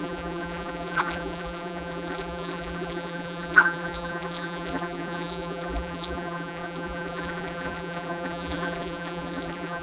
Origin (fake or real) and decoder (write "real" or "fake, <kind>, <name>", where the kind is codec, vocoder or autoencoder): fake, vocoder, BigVGAN v2